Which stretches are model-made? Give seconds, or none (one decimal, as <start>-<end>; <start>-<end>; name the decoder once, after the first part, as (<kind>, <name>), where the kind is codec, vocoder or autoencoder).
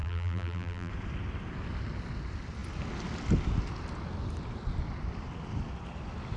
0.0-0.9 (vocoder, BigVGAN v2)